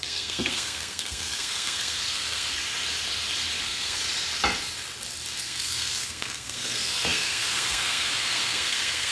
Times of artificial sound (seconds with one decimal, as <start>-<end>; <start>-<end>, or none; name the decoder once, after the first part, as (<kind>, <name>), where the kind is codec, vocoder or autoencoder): 0.0-2.6 (codec, SNAC); 3.6-4.0; 5.4-9.1